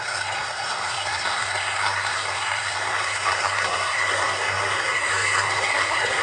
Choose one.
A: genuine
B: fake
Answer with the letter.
B